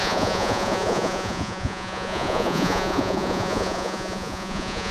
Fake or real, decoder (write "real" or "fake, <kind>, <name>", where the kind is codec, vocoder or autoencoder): fake, vocoder, Vocos